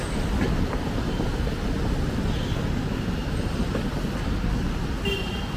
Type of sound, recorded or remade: recorded